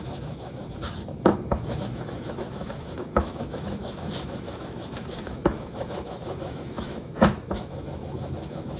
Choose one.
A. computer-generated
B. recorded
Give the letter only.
A